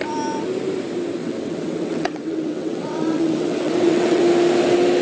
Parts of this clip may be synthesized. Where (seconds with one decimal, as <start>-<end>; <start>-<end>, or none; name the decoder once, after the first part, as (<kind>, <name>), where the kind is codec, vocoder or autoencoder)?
1.2-4.2 (vocoder, WaveNeXt)